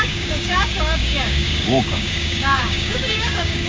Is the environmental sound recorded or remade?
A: remade